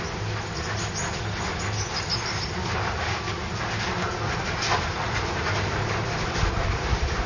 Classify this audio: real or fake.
real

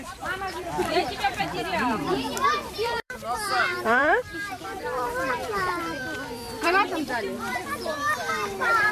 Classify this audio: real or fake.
fake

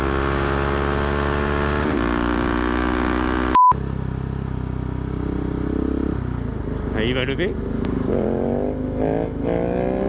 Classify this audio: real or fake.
real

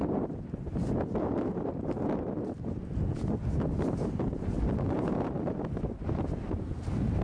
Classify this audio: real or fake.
real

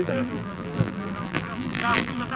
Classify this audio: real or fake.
fake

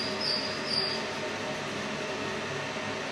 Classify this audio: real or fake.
real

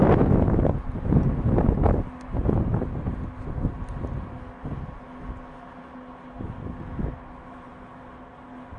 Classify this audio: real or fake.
real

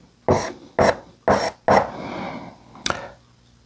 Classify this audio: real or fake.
real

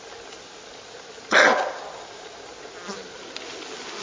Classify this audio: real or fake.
real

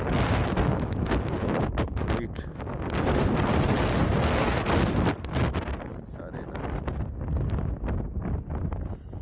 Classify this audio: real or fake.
real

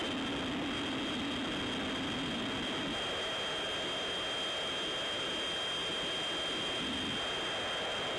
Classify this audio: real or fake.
real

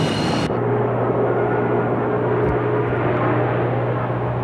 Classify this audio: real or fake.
real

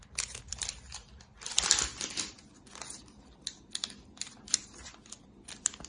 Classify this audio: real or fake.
real